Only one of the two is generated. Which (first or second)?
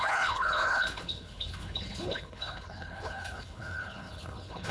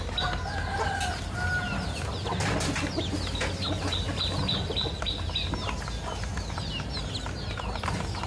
first